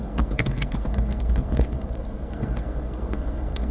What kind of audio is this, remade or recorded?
remade